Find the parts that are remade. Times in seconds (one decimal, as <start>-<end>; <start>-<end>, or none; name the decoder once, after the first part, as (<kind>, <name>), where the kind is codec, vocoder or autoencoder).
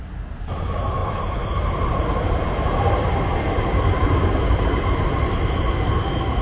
1.0-4.8 (vocoder, BigVGAN v2)